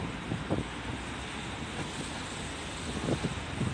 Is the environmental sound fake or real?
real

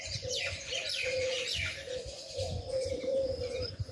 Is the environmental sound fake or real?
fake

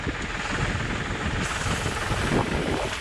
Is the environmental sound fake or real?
fake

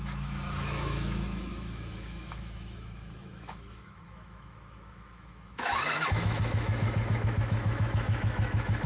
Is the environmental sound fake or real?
fake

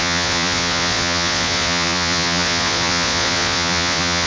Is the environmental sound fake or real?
fake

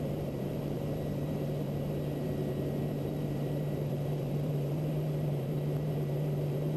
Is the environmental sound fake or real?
fake